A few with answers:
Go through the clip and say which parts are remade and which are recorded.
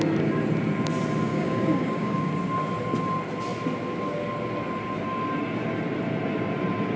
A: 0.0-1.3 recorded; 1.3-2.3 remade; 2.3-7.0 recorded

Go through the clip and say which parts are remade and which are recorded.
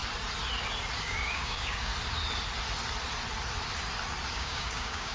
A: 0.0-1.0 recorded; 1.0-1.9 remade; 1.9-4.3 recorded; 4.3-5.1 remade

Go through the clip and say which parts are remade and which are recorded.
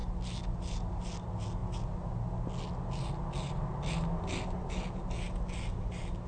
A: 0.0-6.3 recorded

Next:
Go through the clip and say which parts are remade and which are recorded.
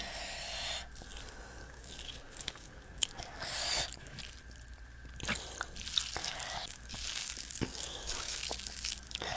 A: 0.0-1.6 recorded; 1.6-4.2 remade; 4.2-6.2 recorded; 6.2-9.4 remade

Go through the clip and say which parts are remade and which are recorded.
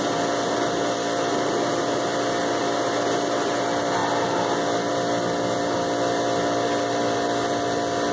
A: 0.0-8.1 recorded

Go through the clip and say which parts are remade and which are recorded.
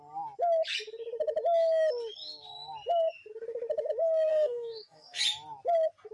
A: 0.0-4.3 recorded; 4.3-5.2 remade; 5.2-6.1 recorded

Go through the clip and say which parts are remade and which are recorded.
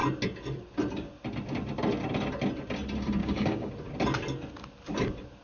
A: 0.0-3.2 recorded; 3.2-3.7 remade; 3.7-5.4 recorded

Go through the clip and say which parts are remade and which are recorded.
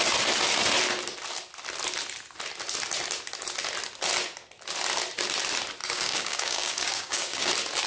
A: 0.0-5.8 recorded; 5.8-7.5 remade; 7.5-7.9 recorded